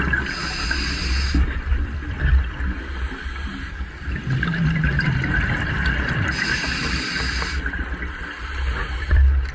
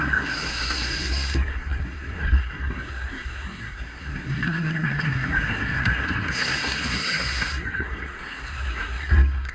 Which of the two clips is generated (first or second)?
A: second